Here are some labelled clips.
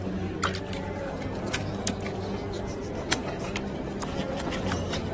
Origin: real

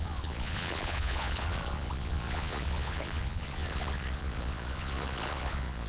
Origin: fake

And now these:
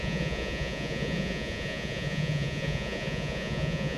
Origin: fake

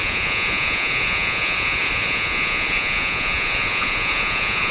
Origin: fake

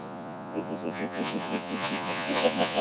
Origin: fake